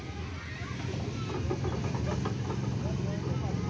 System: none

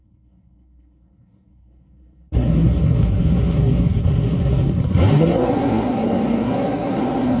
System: codec, SNAC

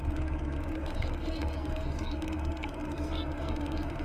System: codec, SNAC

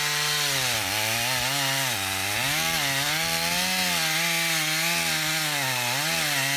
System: none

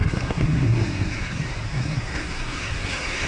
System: codec, SNAC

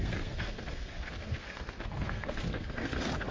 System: codec, SNAC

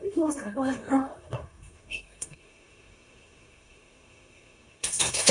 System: codec, SNAC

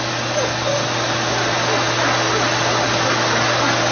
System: none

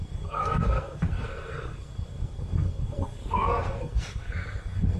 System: codec, SNAC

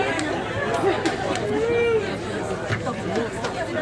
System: none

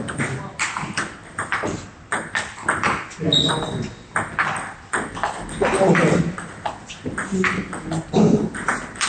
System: none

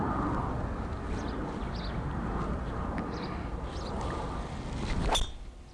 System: none